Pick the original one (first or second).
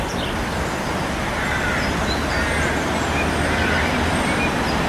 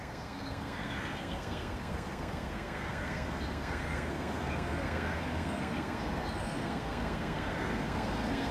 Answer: first